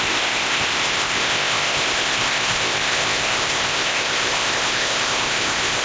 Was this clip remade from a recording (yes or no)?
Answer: yes